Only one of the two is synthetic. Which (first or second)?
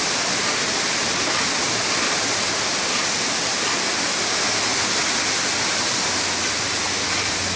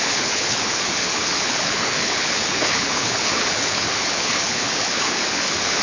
second